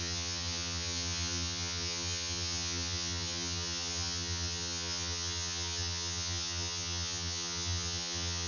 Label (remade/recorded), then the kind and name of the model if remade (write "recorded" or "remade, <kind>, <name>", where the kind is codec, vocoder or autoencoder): remade, vocoder, HiFi-GAN